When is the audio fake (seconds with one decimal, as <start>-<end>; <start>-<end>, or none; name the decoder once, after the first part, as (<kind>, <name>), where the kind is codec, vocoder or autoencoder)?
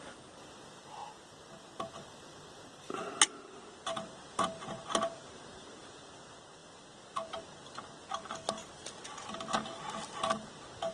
none